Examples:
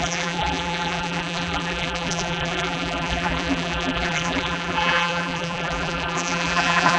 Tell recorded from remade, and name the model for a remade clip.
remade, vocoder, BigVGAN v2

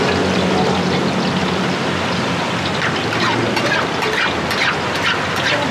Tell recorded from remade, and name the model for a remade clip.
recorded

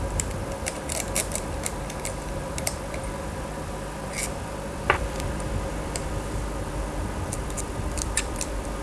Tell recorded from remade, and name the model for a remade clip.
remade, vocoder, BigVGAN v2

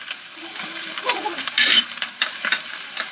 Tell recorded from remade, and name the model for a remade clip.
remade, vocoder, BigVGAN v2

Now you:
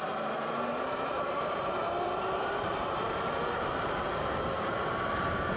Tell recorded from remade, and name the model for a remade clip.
remade, vocoder, BigVGAN v2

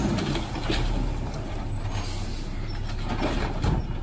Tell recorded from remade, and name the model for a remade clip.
recorded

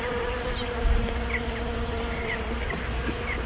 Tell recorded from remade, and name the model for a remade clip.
recorded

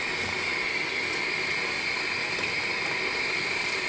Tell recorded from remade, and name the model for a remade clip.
recorded